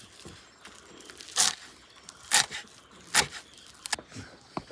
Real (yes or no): yes